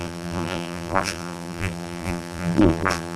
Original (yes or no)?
no